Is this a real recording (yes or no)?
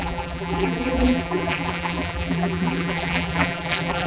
no